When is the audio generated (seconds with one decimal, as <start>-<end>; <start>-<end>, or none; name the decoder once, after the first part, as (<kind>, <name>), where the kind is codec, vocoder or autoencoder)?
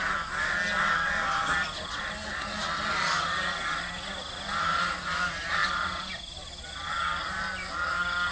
none